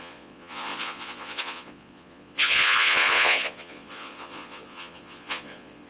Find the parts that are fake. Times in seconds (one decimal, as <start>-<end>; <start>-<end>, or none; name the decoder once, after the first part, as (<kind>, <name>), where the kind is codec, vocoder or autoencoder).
0.0-5.9 (vocoder, Vocos)